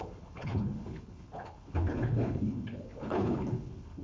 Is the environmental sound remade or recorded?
remade